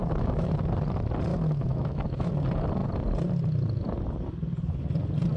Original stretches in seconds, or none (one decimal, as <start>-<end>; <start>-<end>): 0.5-1.3; 2.3-5.4

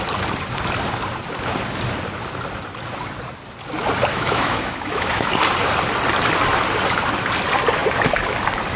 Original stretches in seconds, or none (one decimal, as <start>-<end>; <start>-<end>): 0.0-4.1; 5.3-8.8

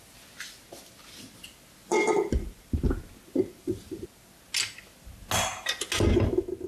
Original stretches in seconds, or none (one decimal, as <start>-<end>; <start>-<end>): 0.0-6.7

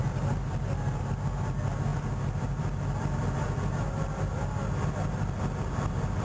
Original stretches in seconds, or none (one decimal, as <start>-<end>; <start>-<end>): 0.0-6.2

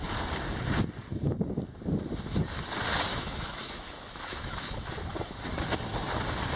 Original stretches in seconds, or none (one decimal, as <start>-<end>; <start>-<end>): 0.0-3.1; 4.9-6.6

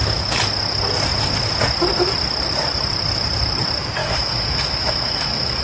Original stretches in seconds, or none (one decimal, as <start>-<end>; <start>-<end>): 0.0-4.0

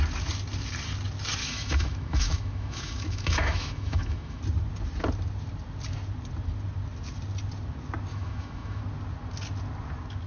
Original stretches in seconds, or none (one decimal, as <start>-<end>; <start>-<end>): 0.0-1.4; 4.4-8.1; 8.8-10.3